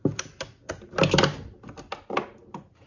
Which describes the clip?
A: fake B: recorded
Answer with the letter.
B